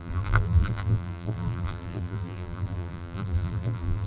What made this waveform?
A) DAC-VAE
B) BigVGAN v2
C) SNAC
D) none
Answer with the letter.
B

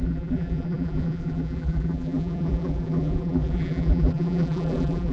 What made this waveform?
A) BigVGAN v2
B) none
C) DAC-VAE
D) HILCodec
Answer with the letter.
A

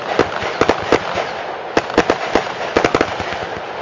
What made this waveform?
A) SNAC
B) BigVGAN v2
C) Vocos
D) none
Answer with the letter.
D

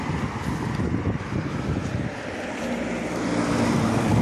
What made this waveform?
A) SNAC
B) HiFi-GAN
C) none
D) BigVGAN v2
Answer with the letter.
D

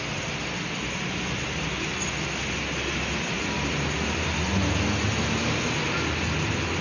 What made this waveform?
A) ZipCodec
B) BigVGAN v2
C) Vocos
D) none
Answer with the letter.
D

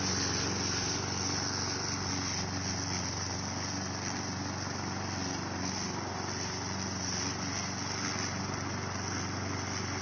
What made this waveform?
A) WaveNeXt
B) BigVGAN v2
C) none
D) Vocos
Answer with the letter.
C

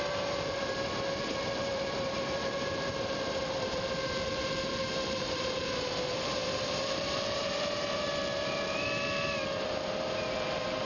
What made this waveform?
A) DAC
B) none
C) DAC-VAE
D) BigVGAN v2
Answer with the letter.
D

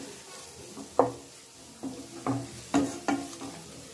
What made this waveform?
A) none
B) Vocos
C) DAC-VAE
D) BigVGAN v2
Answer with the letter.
A